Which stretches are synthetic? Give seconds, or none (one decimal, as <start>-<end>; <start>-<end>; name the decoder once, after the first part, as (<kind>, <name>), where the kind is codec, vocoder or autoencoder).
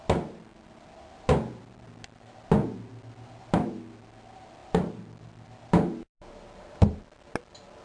none